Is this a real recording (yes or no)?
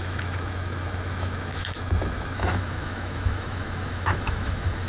no